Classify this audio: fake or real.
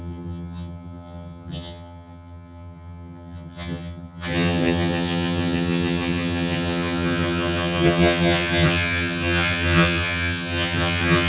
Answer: fake